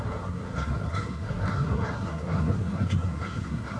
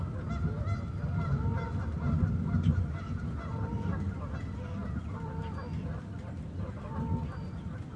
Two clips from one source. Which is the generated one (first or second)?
first